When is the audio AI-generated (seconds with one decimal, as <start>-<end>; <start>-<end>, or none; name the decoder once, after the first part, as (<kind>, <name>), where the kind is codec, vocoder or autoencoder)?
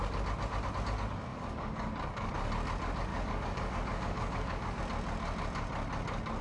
1.3-2.3 (codec, DAC); 3.1-4.8